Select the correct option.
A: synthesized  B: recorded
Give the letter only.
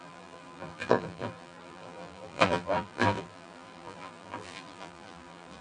A